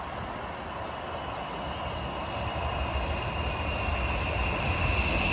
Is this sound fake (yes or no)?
no